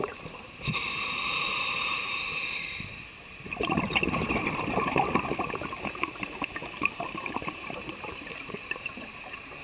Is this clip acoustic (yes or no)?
no